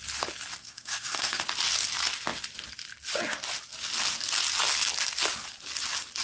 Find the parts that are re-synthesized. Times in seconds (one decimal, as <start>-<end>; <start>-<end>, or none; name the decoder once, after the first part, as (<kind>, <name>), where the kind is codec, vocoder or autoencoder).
0.6-1.4 (codec, SNAC)